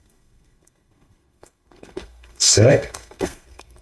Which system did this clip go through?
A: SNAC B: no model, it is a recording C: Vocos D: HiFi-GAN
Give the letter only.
A